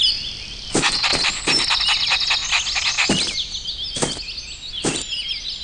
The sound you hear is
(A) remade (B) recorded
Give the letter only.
B